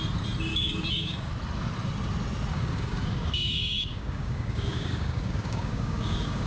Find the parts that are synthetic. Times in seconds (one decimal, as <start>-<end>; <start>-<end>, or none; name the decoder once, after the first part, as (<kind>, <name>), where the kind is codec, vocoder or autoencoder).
0.5-1.3 (codec, DAC); 2.5-6.5